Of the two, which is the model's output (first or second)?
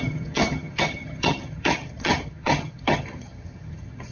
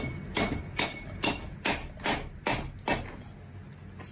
first